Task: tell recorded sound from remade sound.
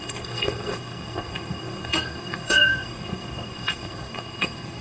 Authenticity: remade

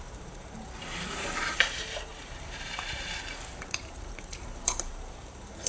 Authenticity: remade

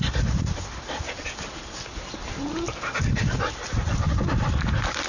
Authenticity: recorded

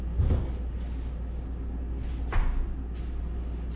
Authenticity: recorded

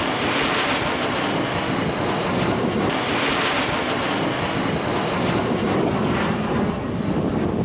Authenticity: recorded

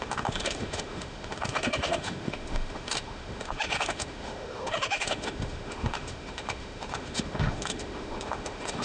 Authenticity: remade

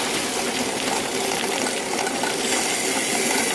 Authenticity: recorded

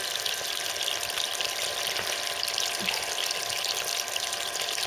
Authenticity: recorded